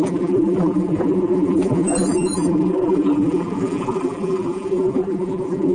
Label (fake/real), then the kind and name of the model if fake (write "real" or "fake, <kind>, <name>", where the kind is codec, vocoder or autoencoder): fake, vocoder, BigVGAN v2